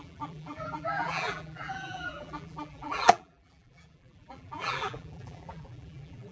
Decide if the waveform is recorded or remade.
remade